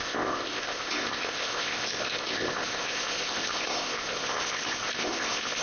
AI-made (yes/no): yes